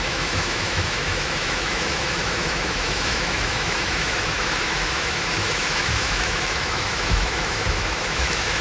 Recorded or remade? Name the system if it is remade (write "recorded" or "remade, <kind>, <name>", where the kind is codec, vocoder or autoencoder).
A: remade, autoencoder, DAC-VAE